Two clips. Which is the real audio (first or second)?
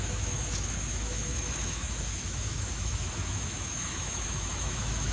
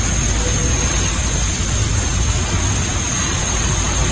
second